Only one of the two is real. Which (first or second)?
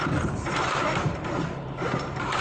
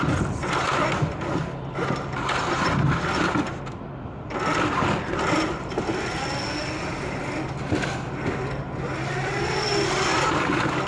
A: second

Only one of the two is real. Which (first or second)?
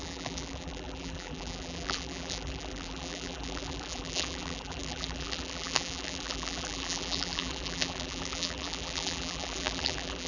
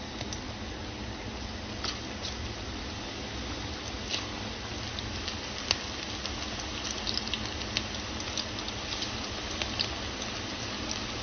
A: second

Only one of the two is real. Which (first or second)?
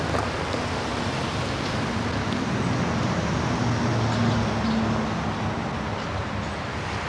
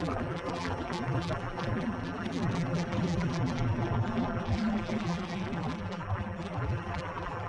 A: first